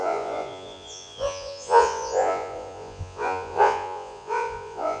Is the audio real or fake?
fake